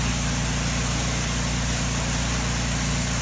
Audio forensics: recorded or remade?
recorded